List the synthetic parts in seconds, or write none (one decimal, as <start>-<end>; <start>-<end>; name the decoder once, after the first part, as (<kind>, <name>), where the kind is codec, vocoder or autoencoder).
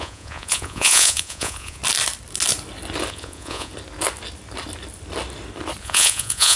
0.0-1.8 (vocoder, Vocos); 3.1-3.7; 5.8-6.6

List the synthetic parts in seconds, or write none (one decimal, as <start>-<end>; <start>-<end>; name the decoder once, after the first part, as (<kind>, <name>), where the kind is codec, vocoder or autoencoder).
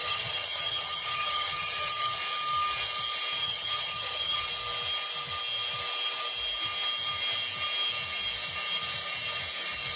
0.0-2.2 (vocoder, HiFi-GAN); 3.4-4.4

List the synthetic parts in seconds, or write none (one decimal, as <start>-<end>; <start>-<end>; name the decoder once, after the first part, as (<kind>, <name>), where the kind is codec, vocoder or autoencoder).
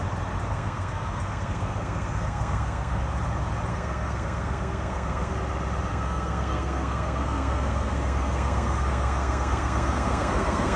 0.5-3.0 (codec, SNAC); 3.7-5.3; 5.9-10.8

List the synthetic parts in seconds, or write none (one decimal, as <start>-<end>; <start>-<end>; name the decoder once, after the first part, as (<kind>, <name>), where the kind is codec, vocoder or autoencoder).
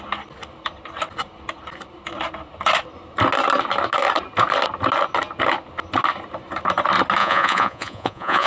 7.2-8.5 (vocoder, Vocos)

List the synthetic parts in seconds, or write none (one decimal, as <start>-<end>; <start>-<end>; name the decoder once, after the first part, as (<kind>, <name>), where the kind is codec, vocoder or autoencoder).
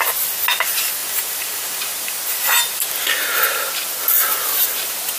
1.0-2.8 (vocoder, BigVGAN v2)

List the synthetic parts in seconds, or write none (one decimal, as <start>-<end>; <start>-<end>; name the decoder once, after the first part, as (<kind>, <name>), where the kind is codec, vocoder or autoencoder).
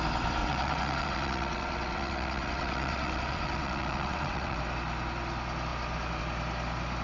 0.4-4.6 (vocoder, WaveNeXt)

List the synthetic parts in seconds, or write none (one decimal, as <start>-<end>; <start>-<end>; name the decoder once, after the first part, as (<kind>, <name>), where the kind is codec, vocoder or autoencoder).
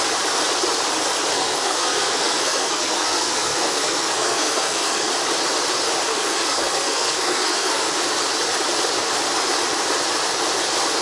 1.3-5.1 (codec, SNAC); 6.1-8.0